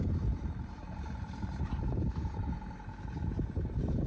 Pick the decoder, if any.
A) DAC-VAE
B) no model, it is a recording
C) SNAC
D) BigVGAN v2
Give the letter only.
D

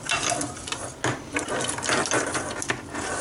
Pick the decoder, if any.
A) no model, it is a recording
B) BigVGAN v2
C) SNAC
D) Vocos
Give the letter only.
A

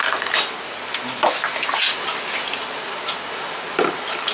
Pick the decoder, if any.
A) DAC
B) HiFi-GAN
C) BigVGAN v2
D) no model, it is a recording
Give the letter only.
D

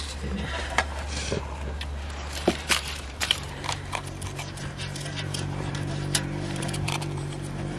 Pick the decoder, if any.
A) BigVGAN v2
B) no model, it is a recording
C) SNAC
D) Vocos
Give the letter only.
A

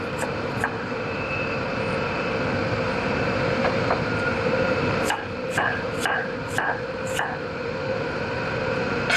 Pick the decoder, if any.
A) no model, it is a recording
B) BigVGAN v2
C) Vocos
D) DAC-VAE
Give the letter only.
B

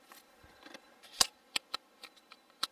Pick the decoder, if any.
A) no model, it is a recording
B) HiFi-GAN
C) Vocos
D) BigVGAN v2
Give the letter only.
A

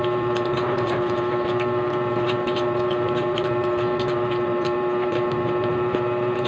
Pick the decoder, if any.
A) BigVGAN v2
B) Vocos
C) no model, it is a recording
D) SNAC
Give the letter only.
A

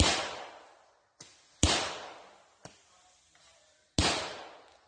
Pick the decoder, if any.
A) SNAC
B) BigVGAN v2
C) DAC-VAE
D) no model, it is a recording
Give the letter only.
D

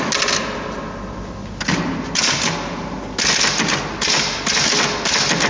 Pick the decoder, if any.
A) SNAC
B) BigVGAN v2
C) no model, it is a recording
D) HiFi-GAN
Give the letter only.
C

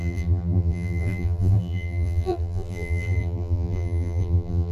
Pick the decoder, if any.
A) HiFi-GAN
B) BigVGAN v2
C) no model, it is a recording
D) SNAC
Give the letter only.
B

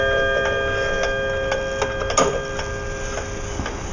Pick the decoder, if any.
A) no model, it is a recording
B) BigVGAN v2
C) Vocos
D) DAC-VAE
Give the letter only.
A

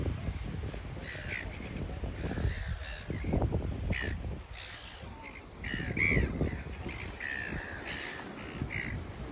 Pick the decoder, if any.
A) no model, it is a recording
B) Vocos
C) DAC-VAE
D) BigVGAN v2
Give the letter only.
A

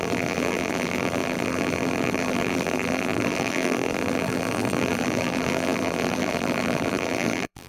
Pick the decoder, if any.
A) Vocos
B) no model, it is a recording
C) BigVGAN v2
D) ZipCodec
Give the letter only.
C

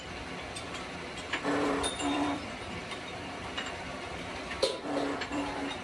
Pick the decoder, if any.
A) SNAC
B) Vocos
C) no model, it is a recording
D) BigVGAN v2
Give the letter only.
D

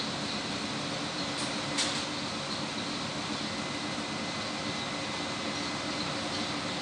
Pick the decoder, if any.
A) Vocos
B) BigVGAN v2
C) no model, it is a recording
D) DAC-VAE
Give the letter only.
C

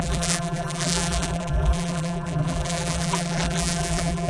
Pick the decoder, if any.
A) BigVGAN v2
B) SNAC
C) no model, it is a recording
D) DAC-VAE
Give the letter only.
A